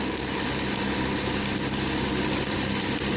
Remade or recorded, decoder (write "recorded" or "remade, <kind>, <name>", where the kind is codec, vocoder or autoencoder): recorded